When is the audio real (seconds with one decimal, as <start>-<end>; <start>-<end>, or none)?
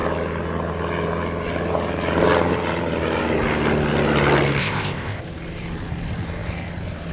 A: 0.0-4.6; 5.2-7.1